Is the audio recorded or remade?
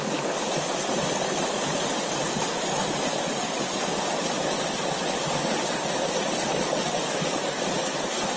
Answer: recorded